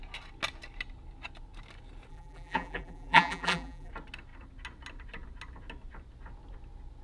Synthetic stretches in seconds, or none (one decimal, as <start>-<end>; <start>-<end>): 2.1-3.9